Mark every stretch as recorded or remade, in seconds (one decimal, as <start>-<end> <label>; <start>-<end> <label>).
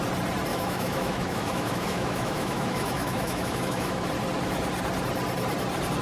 0.0-0.5 recorded; 0.5-4.1 remade; 4.1-6.0 recorded